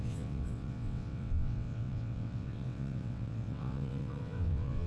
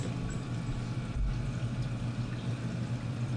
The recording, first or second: second